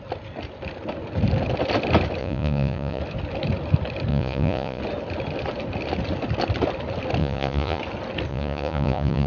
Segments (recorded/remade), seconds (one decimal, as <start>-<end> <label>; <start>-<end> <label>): 0.0-2.2 recorded; 2.2-3.0 remade; 3.0-4.1 recorded; 4.1-4.8 remade; 4.8-7.2 recorded; 7.2-7.8 remade; 7.8-8.3 recorded; 8.3-9.3 remade